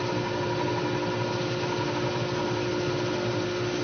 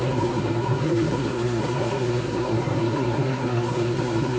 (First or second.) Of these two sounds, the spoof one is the second